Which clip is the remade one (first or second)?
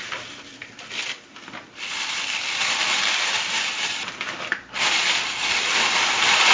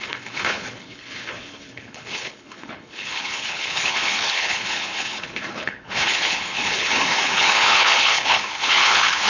second